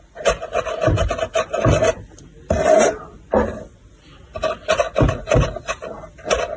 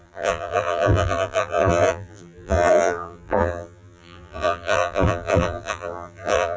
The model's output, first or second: second